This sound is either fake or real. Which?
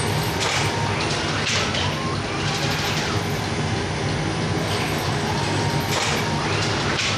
real